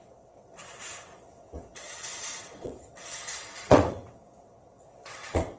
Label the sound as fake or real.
fake